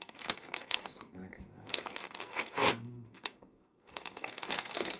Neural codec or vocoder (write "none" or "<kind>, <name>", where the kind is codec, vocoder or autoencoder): codec, SNAC